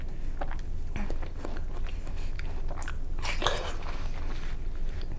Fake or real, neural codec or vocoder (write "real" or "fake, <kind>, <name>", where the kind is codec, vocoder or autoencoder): real